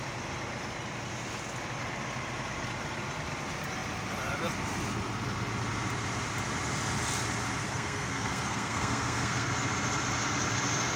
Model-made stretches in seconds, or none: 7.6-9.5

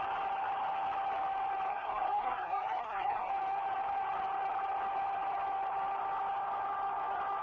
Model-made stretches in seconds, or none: 1.7-3.3

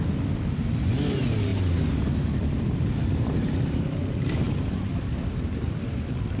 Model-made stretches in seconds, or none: none

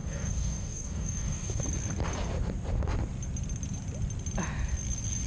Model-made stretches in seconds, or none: 0.0-1.6

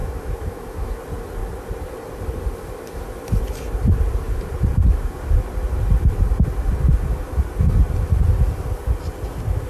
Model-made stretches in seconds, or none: 0.0-1.0

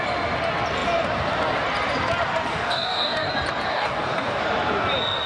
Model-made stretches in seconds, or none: 2.5-3.3; 3.7-4.4